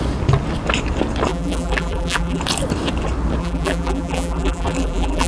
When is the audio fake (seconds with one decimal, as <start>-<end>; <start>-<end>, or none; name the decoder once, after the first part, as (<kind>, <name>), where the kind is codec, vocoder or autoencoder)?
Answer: 1.3-2.4 (vocoder, BigVGAN v2); 3.4-5.3